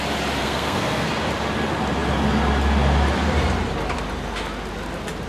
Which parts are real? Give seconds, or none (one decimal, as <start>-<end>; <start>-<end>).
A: 0.0-0.4; 1.1-5.3